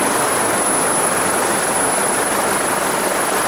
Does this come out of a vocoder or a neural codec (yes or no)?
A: no